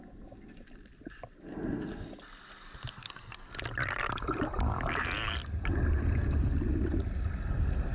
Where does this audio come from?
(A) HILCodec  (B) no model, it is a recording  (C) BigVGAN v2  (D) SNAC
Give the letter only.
B